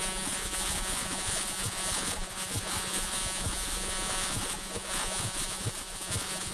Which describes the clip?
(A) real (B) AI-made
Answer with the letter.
B